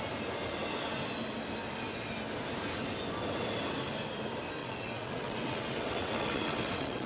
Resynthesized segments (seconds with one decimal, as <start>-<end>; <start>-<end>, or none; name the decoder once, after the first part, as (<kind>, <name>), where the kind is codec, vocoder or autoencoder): 4.6-7.1 (vocoder, WaveNeXt)